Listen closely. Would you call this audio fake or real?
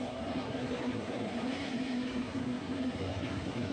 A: fake